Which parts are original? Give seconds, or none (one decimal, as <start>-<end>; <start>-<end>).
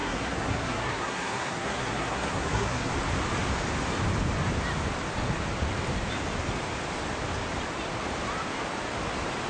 2.9-9.5